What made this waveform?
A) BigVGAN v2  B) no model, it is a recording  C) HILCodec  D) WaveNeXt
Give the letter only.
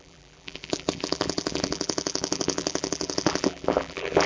A